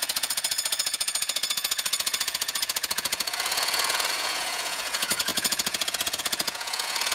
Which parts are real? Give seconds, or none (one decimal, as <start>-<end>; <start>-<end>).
none